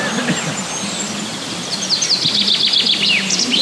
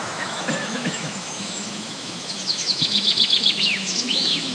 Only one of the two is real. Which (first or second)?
first